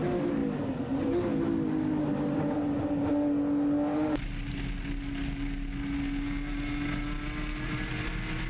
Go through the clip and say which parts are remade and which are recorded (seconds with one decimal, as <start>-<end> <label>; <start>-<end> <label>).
0.0-8.5 recorded